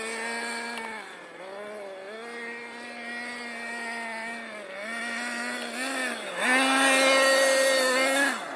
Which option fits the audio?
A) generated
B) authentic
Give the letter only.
B